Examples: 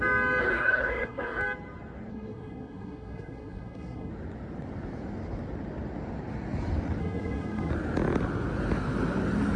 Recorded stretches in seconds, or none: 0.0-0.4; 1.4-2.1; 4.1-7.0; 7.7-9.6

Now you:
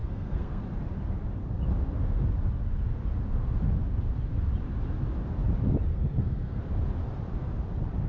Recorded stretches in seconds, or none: 0.6-5.9; 6.6-8.1

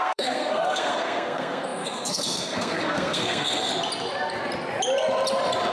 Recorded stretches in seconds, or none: 3.7-5.7

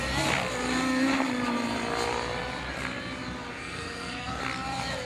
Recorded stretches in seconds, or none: 0.0-3.5; 4.4-5.0